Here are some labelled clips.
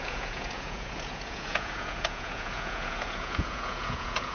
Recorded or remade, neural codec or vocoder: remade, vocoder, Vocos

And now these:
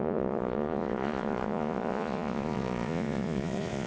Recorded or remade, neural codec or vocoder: remade, vocoder, Vocos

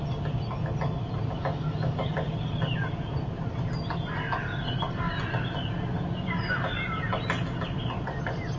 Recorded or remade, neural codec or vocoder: recorded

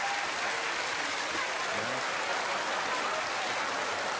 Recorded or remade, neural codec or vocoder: recorded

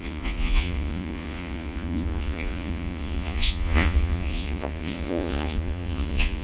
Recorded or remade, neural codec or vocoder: remade, vocoder, Vocos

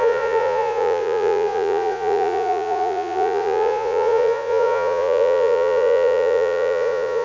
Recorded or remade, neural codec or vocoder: remade, vocoder, Vocos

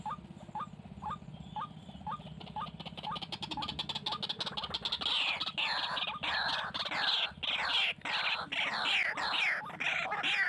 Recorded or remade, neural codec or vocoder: recorded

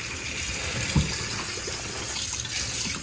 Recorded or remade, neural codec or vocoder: recorded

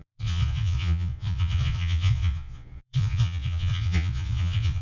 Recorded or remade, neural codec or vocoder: remade, vocoder, Vocos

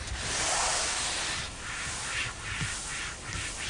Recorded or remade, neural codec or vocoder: recorded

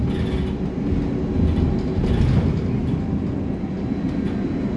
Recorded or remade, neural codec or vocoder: recorded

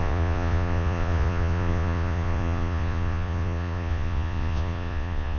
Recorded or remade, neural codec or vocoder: remade, vocoder, Vocos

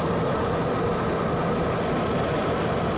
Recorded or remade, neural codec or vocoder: recorded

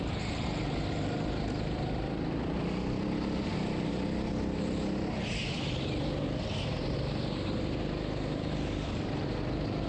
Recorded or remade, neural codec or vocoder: recorded